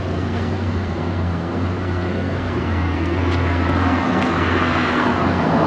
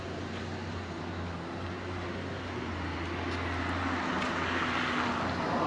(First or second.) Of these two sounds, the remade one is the first